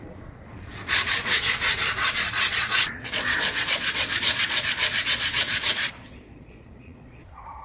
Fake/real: fake